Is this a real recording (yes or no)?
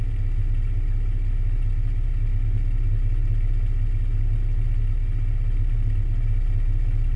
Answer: yes